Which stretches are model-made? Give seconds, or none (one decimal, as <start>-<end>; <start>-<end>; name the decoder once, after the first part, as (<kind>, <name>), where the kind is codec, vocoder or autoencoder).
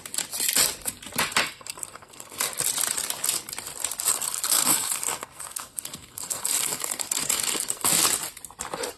1.4-2.4 (codec, SNAC); 4.1-7.9